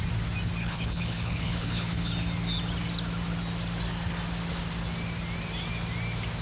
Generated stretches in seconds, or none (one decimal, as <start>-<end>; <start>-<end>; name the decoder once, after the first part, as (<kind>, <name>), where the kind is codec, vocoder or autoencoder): 0.6-2.1 (codec, HILCodec)